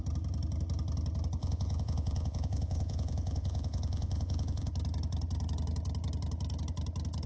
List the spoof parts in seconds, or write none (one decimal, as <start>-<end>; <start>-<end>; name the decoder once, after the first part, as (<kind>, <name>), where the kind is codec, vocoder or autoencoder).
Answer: 1.4-4.7 (vocoder, Vocos)